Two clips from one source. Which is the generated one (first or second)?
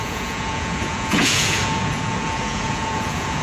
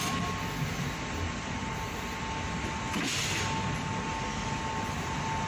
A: first